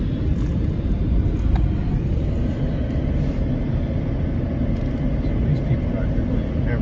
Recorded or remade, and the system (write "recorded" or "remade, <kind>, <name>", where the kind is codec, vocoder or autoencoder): recorded